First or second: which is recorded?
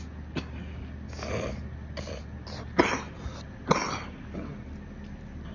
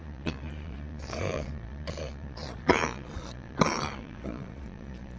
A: first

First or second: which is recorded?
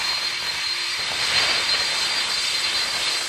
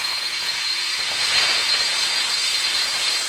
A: first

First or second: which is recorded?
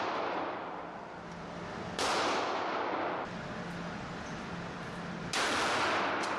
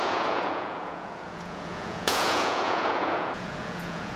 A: first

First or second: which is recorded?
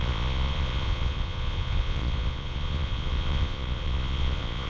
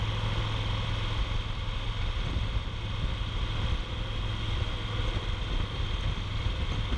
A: second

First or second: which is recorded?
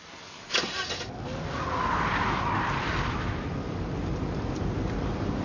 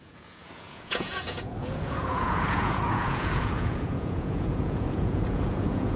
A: first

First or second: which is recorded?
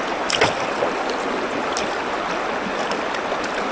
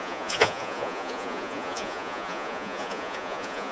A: first